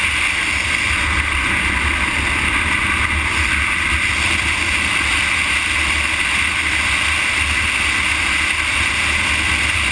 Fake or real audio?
real